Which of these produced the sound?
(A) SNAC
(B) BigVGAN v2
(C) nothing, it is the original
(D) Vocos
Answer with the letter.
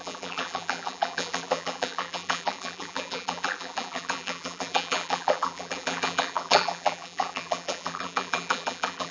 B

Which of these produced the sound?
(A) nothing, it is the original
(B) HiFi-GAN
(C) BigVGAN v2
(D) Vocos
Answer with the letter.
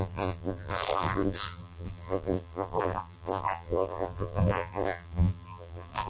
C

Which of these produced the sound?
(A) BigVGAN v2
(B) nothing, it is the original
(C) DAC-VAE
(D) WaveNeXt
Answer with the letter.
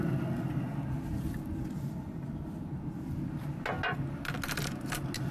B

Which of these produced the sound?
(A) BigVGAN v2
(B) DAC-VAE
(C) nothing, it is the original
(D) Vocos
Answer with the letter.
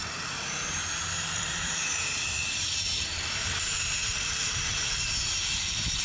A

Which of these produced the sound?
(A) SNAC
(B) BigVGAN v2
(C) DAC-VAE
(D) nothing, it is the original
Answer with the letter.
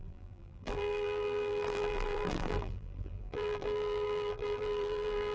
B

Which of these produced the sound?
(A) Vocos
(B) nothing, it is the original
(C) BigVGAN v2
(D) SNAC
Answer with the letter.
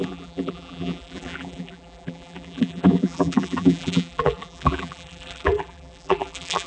C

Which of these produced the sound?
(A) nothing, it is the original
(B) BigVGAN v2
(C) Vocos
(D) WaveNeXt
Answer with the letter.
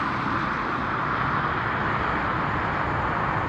A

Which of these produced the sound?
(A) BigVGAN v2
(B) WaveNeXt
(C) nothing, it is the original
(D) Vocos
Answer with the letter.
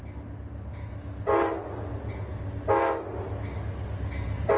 C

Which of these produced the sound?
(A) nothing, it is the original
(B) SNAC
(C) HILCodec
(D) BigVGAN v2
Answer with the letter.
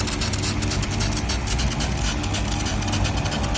A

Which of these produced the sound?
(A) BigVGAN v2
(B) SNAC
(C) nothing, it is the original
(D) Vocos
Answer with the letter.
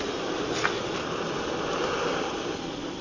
C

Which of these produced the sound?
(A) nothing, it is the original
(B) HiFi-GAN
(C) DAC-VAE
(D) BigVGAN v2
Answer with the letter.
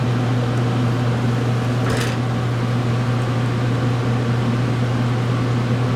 A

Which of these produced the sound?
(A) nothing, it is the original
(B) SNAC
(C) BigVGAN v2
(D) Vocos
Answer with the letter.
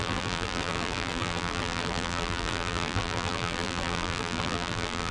C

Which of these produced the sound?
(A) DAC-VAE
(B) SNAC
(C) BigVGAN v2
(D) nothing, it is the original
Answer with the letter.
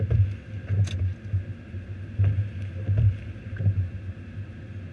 D